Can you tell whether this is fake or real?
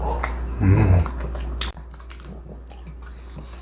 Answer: real